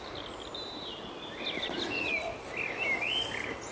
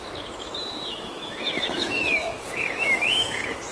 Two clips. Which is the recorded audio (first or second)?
first